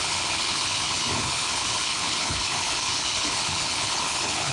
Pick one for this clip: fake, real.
fake